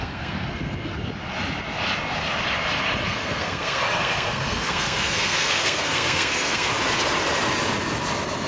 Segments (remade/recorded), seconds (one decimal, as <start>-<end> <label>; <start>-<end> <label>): 0.0-0.9 remade; 0.9-3.1 recorded; 3.1-6.7 remade; 6.7-8.5 recorded